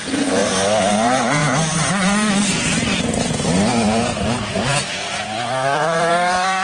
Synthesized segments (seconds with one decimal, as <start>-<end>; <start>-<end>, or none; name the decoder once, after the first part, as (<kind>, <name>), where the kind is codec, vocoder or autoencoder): 0.0-0.4 (vocoder, BigVGAN v2); 0.9-6.6